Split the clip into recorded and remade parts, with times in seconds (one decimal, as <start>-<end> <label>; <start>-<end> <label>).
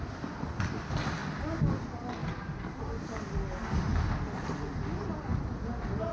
0.0-2.2 recorded; 2.2-3.3 remade; 3.3-6.1 recorded